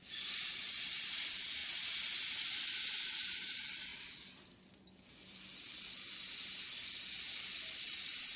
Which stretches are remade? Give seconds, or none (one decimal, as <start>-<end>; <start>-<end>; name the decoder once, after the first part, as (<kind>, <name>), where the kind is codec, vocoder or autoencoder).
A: 0.0-1.6 (vocoder, BigVGAN v2); 2.8-3.9; 7.8-8.4